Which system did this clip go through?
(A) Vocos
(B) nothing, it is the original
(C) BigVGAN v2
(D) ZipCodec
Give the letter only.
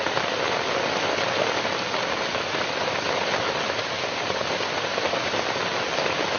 B